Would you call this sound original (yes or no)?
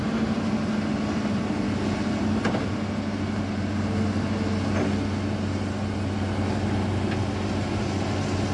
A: yes